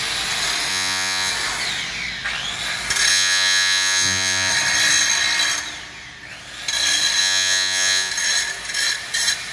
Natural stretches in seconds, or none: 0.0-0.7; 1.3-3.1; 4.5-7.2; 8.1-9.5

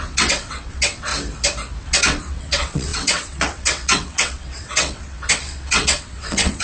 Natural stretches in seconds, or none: 1.1-1.8

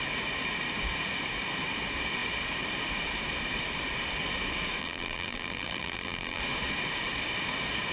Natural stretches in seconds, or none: 0.0-4.8; 6.4-7.9

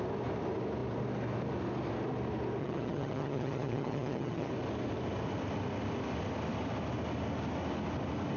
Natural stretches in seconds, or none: 0.0-2.6; 4.5-8.4

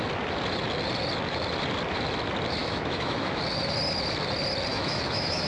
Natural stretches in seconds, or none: 0.0-2.6; 3.4-4.7